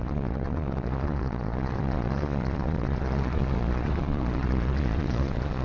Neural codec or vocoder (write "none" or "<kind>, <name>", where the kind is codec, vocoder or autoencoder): vocoder, Vocos